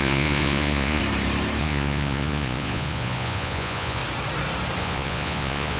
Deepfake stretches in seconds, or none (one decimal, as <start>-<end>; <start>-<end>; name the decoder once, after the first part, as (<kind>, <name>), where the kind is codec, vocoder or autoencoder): 0.0-1.0 (vocoder, Vocos); 1.6-4.0; 4.8-5.8